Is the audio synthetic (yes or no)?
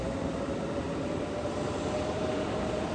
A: yes